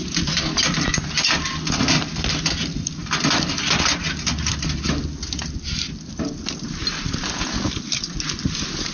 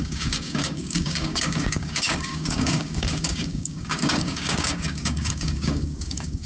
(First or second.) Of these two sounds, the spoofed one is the second